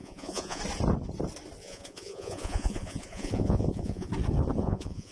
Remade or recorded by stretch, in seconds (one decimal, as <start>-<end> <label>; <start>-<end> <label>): 0.0-0.6 remade; 0.6-1.6 recorded; 1.6-4.1 remade; 4.1-4.6 recorded; 4.6-5.1 remade